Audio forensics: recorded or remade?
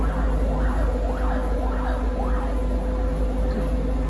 recorded